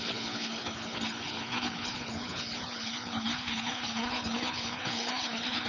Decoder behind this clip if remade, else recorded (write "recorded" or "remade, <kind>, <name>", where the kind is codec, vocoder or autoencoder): remade, codec, HILCodec